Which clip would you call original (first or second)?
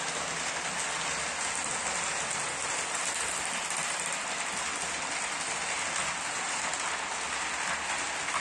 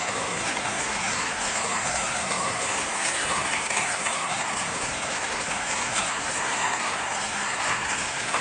first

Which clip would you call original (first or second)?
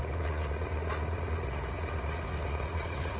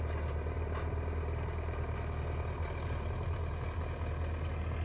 second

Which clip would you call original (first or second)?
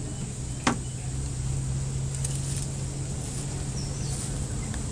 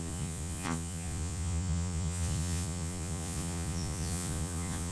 first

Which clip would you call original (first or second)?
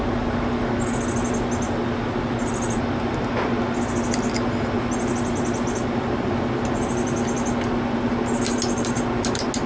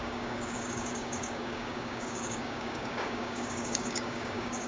first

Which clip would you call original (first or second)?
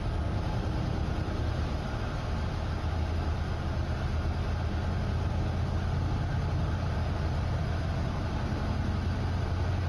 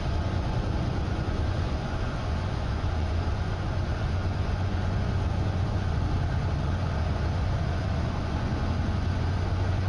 first